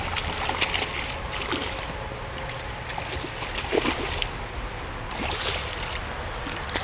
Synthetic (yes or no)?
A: no